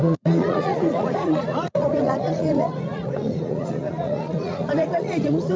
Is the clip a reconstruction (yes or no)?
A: yes